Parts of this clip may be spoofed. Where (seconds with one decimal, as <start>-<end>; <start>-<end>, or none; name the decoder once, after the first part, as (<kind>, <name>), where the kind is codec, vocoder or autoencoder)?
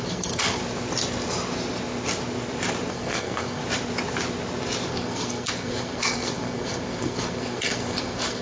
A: 0.0-0.6 (codec, SNAC); 2.9-3.6; 4.9-8.4